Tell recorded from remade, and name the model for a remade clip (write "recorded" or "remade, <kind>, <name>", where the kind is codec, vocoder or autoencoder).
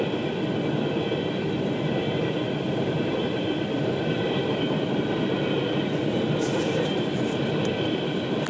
recorded